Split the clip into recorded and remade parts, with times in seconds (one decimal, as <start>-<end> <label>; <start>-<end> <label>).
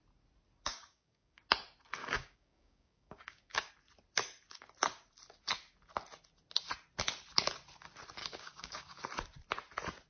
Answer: 0.0-0.7 recorded; 0.7-1.4 remade; 1.4-2.0 recorded; 2.0-3.7 remade; 3.7-8.2 recorded; 8.2-9.0 remade; 9.0-10.1 recorded